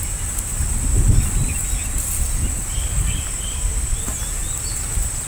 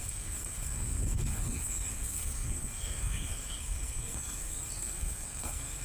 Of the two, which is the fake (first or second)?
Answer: second